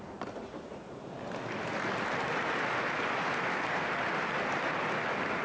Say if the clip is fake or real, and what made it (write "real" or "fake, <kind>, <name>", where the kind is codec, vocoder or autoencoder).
real